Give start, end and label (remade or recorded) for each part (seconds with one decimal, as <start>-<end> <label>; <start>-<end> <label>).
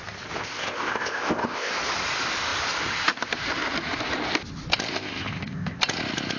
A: 0.0-0.4 recorded; 0.4-1.7 remade; 1.7-4.9 recorded; 4.9-5.8 remade; 5.8-6.4 recorded